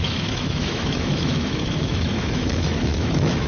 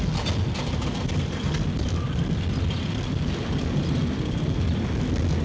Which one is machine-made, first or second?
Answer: first